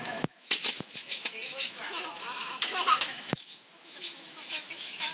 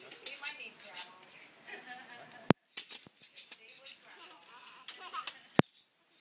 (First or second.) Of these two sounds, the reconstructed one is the first